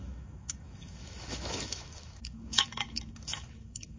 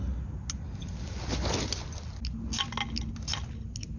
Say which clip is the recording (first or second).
second